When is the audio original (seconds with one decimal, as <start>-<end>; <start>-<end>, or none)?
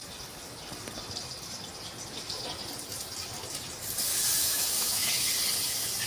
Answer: 0.0-4.4; 5.3-6.1